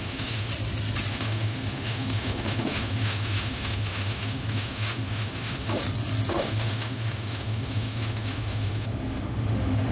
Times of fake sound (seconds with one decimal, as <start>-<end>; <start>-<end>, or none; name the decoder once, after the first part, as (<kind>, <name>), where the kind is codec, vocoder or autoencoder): 0.0-0.5 (autoencoder, DAC-VAE); 1.1-5.8; 6.3-9.9